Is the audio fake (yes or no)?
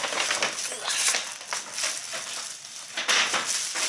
no